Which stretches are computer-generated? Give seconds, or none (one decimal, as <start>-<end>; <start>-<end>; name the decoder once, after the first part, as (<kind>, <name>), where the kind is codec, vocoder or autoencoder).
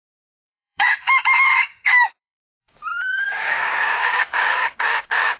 0.0-5.4 (codec, DAC)